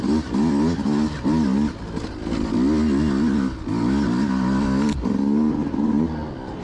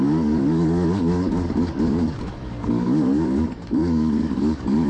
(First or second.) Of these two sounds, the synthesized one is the second